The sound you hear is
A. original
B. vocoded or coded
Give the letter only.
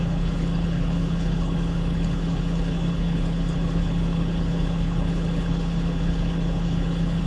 B